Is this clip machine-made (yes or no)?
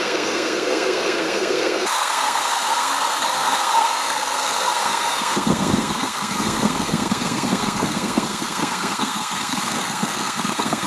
yes